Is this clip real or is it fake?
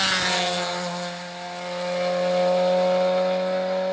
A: real